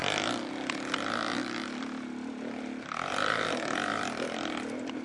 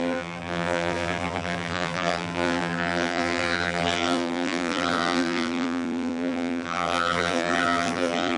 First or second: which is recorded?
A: first